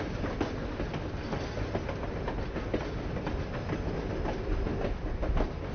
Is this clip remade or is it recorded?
recorded